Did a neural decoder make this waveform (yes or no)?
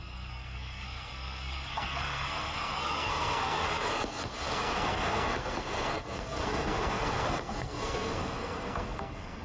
yes